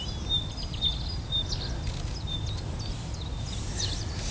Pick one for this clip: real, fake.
real